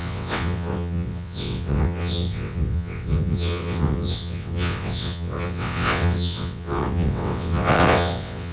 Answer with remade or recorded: remade